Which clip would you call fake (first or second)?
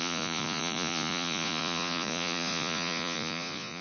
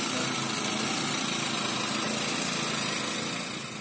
first